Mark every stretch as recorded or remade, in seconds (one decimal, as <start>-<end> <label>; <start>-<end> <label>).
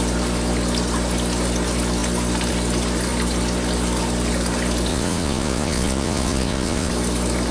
0.0-4.9 recorded; 4.9-6.9 remade; 6.9-7.5 recorded